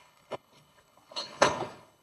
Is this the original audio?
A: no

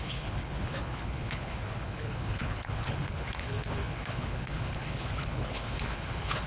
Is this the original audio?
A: no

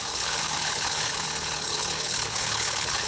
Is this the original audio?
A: no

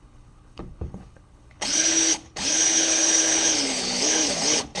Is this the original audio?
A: no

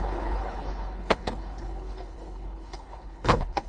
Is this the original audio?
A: no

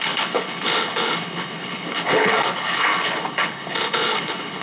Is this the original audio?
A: no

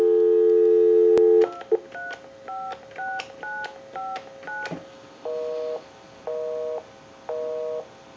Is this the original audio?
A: yes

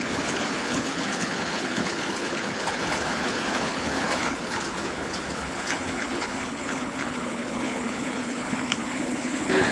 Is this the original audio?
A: no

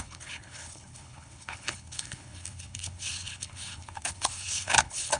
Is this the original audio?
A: no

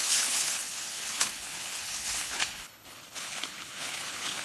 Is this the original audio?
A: no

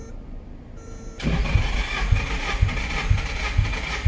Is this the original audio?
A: yes